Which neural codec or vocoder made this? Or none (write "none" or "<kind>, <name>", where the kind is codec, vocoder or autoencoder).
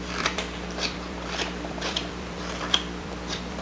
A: vocoder, BigVGAN v2